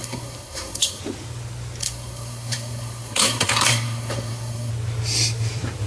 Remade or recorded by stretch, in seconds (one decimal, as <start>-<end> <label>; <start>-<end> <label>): 0.0-1.0 remade; 1.0-1.8 recorded; 1.8-4.7 remade; 4.7-5.9 recorded